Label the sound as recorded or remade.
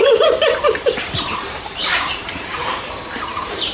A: remade